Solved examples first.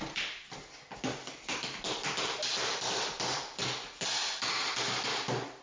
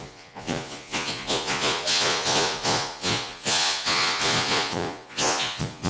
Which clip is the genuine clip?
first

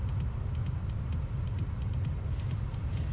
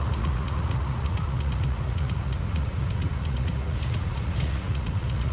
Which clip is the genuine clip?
first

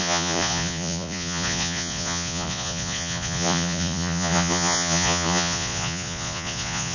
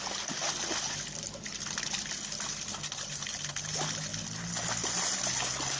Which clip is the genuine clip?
second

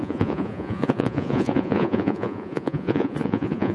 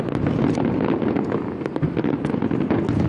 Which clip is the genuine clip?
second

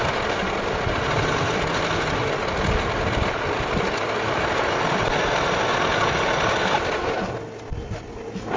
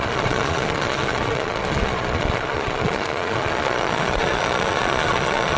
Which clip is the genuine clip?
first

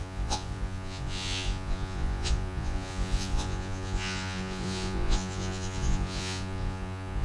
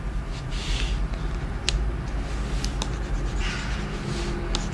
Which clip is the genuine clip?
second